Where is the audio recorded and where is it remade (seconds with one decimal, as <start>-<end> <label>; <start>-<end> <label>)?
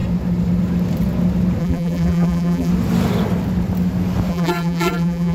0.0-1.6 recorded; 1.6-2.7 remade; 2.7-4.3 recorded; 4.3-5.3 remade